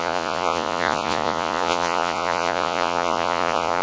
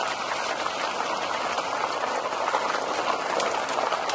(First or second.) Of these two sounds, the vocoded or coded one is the first